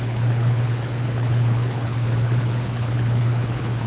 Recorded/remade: remade